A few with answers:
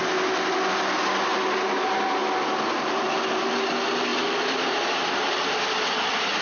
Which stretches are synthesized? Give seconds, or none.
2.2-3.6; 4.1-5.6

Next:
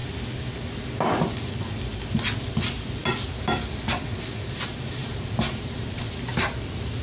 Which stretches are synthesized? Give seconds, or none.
5.0-6.4

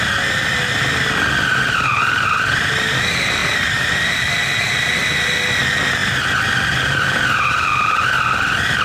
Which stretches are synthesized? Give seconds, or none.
3.4-4.6

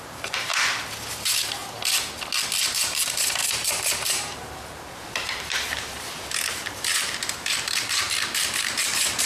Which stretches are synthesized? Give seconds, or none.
0.0-0.5; 1.1-1.6; 2.6-9.3

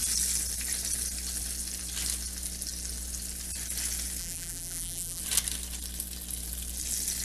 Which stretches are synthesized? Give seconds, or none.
4.2-5.2